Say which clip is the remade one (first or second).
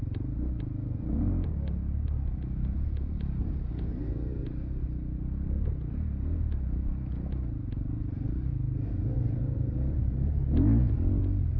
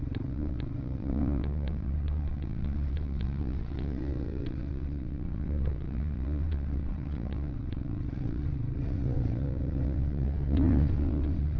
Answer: second